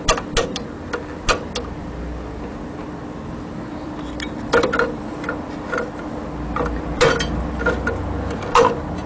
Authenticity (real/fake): real